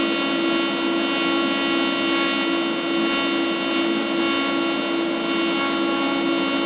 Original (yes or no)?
yes